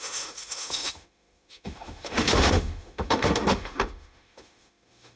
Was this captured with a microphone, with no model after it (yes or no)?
no